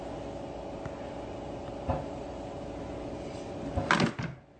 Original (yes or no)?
yes